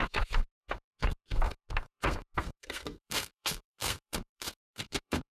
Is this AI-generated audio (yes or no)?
yes